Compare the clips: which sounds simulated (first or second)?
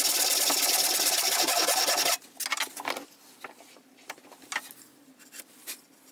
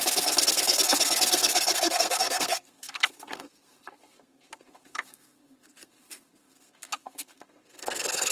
second